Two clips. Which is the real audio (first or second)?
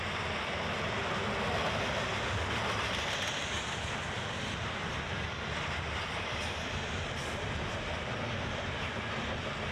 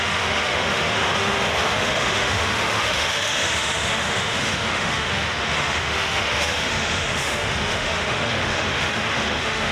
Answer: first